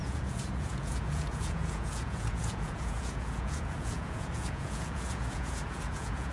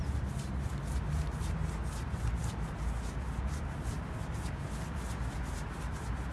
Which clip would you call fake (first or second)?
first